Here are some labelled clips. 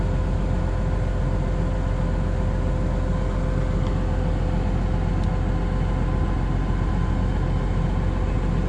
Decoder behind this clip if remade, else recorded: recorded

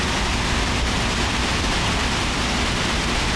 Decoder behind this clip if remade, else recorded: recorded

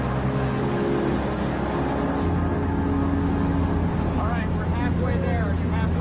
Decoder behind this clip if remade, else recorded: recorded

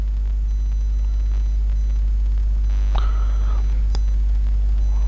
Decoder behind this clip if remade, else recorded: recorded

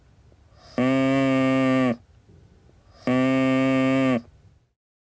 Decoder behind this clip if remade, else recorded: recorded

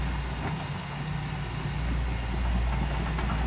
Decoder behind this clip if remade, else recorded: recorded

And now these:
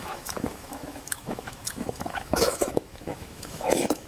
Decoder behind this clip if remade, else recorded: remade, autoencoder, DAC-VAE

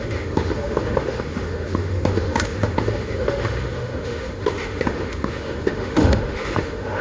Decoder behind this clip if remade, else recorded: remade, autoencoder, DAC-VAE